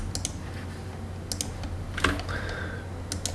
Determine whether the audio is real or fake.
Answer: real